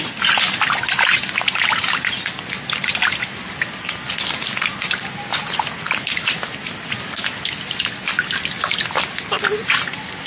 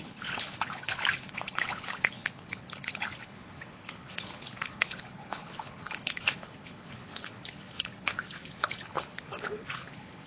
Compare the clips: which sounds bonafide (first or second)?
first